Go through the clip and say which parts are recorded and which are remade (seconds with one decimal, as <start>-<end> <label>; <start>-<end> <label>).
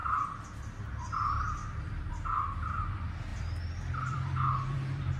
0.0-1.6 recorded; 1.6-2.1 remade; 2.1-3.3 recorded; 3.3-5.2 remade